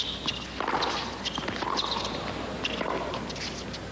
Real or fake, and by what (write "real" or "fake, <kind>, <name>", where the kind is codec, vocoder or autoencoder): real